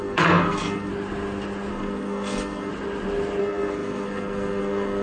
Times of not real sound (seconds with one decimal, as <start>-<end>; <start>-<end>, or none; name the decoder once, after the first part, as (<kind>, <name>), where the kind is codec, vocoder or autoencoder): 0.0-0.9 (codec, SNAC); 1.7-2.7; 3.4-5.0